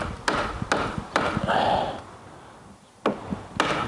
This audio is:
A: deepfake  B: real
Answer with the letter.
B